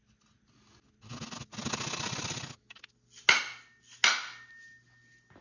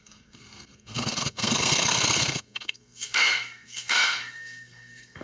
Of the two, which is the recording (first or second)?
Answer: first